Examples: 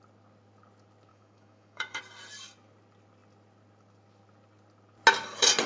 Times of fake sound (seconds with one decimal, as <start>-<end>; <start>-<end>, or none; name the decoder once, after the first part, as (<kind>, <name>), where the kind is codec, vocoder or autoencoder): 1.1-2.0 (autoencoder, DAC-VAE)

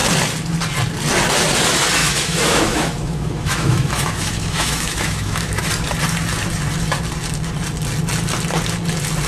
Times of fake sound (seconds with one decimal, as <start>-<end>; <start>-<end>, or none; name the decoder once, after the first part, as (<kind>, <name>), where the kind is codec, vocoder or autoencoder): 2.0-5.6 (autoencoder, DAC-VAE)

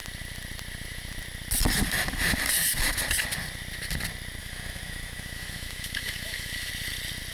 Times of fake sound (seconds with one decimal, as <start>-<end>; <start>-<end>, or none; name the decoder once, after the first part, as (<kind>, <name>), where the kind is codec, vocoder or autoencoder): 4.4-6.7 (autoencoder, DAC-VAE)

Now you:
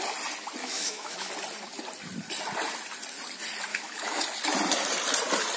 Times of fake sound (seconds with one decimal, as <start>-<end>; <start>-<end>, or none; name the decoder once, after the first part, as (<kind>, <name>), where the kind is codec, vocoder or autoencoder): 0.6-1.3 (autoencoder, DAC-VAE); 3.7-4.2